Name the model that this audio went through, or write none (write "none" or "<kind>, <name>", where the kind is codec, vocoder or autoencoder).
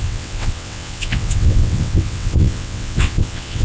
vocoder, WaveNeXt